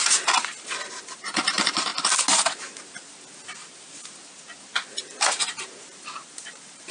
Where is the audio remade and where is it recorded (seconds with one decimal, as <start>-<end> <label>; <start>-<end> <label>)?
0.0-1.0 recorded; 1.0-1.9 remade; 1.9-5.8 recorded; 5.8-6.9 remade

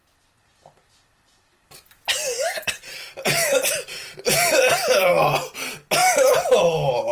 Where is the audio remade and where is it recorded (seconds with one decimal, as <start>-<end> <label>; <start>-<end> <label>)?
0.0-0.8 recorded; 0.8-5.1 remade; 5.1-6.0 recorded; 6.0-6.6 remade; 6.6-7.1 recorded